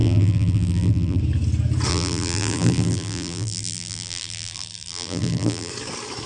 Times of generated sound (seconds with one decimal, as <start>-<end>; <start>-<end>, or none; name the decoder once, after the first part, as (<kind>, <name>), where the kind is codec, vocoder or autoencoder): 0.0-1.2 (vocoder, BigVGAN v2); 1.9-5.7